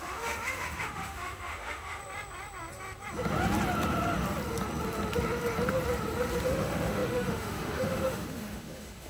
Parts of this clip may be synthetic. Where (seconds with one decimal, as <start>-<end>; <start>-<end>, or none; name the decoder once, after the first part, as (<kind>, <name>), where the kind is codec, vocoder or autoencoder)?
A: 0.0-2.0 (autoencoder, DAC-VAE); 6.4-9.1